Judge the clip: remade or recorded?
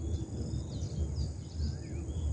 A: recorded